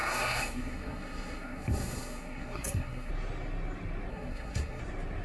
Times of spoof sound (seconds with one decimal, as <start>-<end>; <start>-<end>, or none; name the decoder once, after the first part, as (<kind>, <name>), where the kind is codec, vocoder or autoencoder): 0.0-3.1 (codec, SNAC); 4.1-4.8